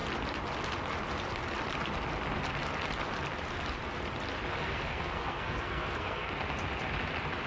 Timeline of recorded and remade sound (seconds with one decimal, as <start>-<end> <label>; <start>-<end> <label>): 0.0-4.6 recorded; 4.6-6.3 remade; 6.3-7.5 recorded